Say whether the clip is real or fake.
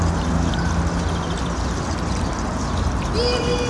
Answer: real